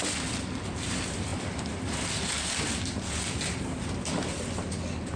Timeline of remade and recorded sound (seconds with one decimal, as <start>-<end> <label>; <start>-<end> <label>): 0.0-5.2 recorded